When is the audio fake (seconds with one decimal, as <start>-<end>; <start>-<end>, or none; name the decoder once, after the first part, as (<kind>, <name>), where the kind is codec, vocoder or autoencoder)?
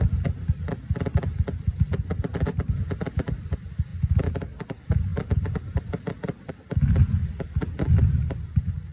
none